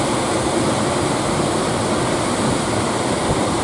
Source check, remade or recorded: remade